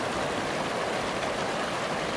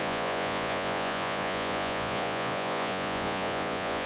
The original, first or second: first